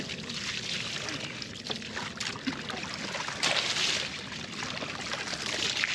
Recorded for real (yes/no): yes